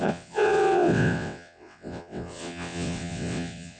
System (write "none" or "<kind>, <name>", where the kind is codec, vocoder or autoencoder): vocoder, WaveNeXt